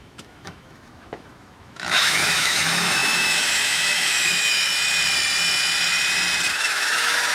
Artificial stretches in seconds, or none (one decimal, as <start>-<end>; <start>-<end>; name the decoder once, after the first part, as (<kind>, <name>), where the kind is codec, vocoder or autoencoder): 0.0-4.7 (autoencoder, DAC-VAE); 6.5-7.3